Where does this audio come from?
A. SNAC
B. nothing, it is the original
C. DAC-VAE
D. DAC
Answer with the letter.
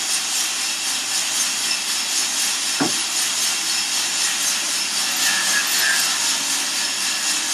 B